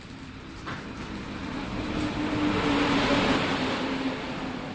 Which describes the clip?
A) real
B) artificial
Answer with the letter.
A